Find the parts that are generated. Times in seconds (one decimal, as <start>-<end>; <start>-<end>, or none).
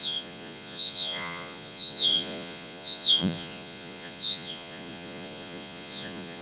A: 0.0-6.4